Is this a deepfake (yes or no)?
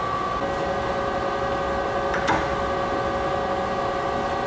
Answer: no